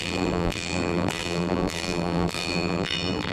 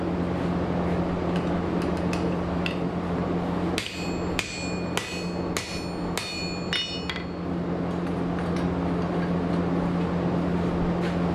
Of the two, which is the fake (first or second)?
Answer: first